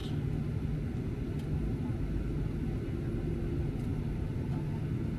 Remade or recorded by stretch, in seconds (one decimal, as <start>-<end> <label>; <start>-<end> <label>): 0.0-3.9 recorded; 3.9-4.5 remade; 4.5-5.2 recorded